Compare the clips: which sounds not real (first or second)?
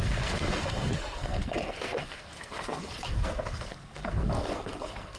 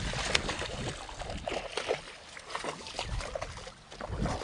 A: first